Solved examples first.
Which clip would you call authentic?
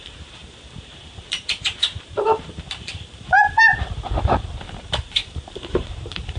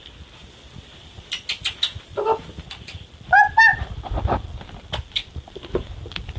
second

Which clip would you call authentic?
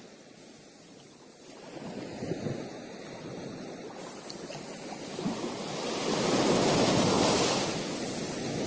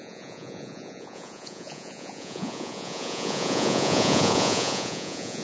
first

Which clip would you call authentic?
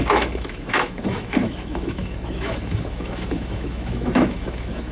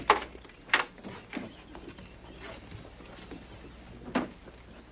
second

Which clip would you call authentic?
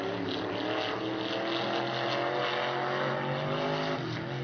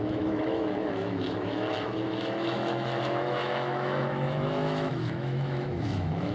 first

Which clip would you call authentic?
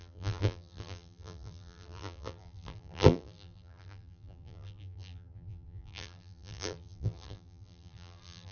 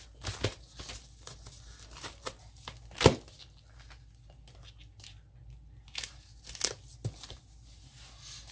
second